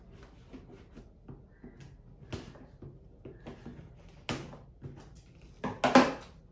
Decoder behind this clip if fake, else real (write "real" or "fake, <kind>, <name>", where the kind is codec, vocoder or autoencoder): real